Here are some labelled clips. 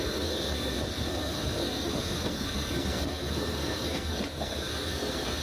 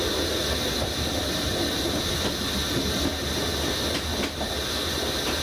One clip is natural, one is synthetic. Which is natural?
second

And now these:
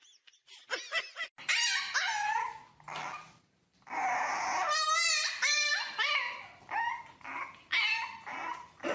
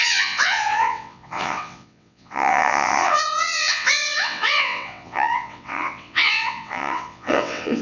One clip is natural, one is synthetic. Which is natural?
first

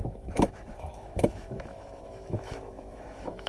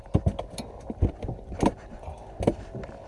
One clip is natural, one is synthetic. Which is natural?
second